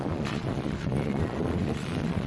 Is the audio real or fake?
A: fake